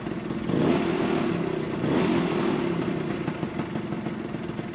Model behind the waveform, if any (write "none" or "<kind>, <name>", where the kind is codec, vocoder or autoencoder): none